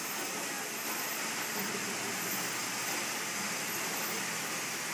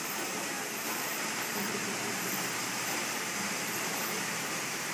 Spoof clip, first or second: second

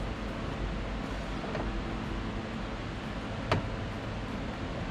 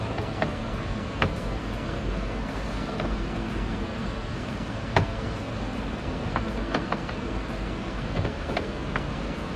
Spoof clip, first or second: second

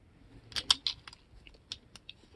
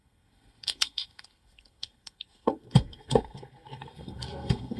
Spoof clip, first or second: second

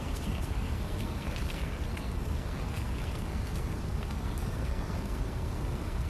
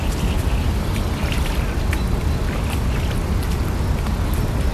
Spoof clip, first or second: first